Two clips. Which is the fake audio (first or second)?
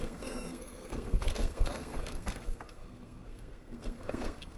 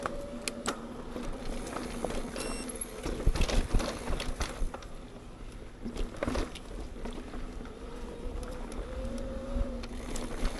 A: first